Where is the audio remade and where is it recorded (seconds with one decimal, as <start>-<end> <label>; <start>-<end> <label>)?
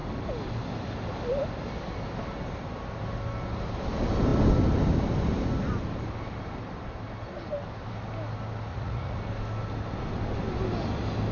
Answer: 0.0-8.7 recorded; 8.7-9.2 remade; 9.2-11.3 recorded